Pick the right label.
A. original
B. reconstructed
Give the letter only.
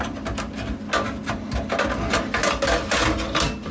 A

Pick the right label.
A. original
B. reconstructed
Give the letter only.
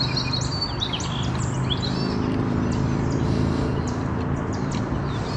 A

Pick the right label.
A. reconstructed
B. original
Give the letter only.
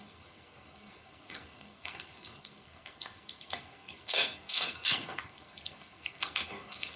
A